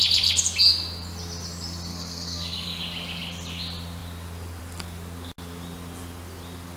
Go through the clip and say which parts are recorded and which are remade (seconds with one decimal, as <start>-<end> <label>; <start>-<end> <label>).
0.0-1.9 recorded; 1.9-2.8 remade; 2.8-6.8 recorded